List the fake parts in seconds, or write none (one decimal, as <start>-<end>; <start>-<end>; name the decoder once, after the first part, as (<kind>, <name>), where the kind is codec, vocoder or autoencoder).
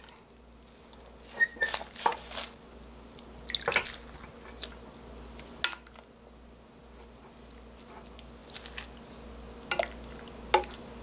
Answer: none